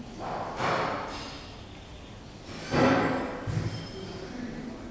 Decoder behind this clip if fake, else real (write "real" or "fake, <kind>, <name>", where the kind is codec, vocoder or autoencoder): real